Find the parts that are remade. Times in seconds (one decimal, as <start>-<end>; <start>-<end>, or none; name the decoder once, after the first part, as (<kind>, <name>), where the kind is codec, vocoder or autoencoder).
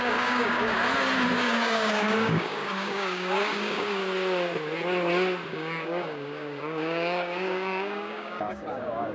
0.0-0.8 (codec, DAC); 1.3-4.0; 5.5-9.1